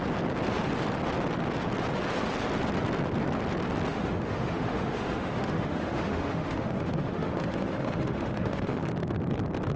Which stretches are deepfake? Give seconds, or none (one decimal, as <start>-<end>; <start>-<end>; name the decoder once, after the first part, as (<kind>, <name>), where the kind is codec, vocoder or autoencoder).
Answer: 3.9-8.9 (autoencoder, DAC-VAE)